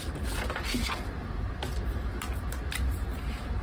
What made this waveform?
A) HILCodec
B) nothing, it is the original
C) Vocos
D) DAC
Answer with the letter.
B